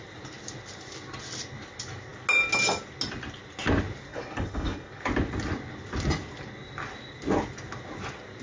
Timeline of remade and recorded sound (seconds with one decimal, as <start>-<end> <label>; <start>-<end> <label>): 0.0-4.1 recorded; 4.1-5.0 remade; 5.0-8.4 recorded